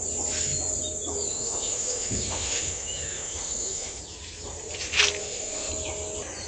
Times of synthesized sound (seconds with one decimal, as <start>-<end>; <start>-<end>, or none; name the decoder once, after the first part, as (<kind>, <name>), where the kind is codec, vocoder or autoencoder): 1.3-4.0 (autoencoder, DAC-VAE); 5.2-5.7